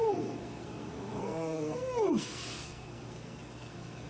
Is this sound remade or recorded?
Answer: remade